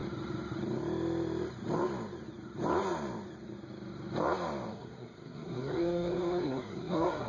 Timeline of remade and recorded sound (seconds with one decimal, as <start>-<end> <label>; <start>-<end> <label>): 0.0-4.7 recorded; 4.7-7.3 remade